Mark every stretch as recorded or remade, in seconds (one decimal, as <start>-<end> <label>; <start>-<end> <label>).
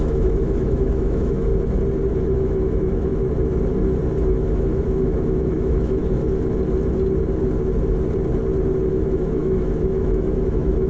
0.0-1.5 remade; 1.5-2.1 recorded; 2.1-3.1 remade; 3.1-4.2 recorded; 4.2-6.0 remade; 6.0-8.9 recorded; 8.9-10.9 remade